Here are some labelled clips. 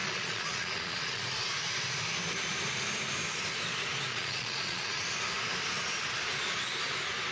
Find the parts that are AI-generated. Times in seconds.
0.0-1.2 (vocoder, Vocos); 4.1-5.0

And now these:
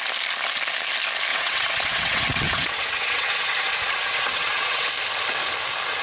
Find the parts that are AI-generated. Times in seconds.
1.3-4.9 (vocoder, WaveNeXt)

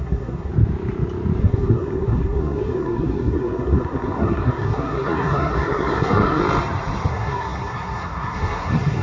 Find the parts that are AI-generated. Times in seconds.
0.0-0.5 (codec, SNAC); 1.4-6.4; 7.1-9.0

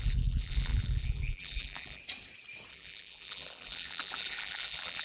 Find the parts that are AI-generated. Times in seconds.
0.0-2.0 (vocoder, BigVGAN v2); 2.7-5.0

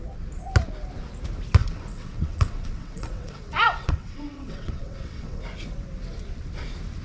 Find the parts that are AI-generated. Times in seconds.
1.6-5.4 (vocoder, WaveNeXt)

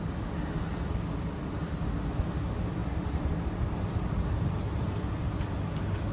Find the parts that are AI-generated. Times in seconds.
none

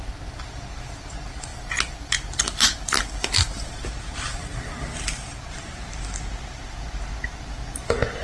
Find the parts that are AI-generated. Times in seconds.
1.5-3.9 (vocoder, BigVGAN v2)